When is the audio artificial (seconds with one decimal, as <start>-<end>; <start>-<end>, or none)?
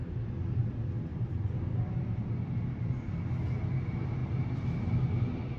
1.1-2.8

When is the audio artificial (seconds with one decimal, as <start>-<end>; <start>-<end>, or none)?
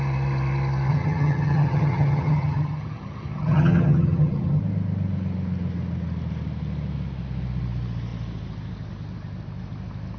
0.9-4.6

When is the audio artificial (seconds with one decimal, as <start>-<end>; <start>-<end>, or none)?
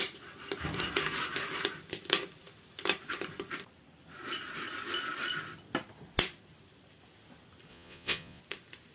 7.7-8.4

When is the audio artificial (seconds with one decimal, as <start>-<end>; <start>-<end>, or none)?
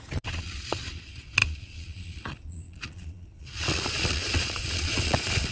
0.0-5.5